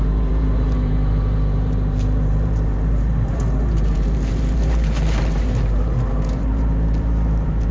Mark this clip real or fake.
fake